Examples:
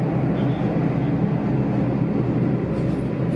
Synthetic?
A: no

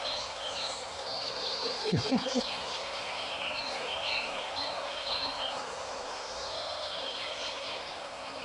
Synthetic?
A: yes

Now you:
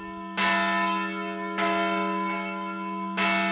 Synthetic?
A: no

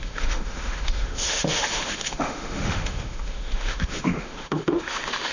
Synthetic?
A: yes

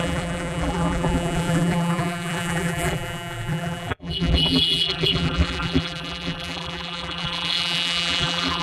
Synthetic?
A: yes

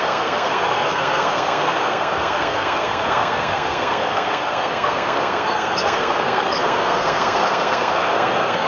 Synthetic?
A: yes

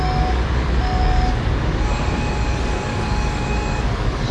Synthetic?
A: yes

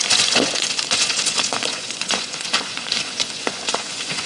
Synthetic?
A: yes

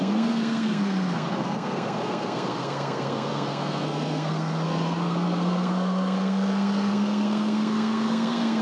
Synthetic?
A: yes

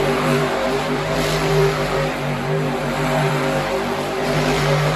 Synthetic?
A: yes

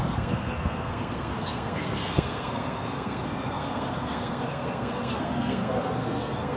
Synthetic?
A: yes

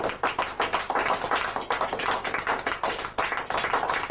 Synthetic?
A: no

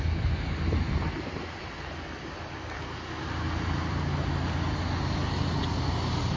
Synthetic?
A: no